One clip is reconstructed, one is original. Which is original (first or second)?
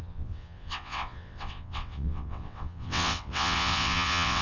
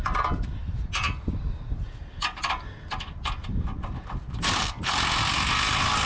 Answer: second